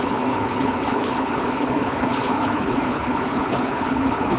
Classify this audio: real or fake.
fake